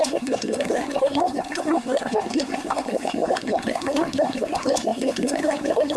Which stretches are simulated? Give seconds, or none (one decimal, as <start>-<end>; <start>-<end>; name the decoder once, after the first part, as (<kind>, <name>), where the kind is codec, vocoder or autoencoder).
0.0-6.0 (codec, SNAC)